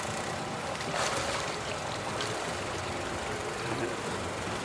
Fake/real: real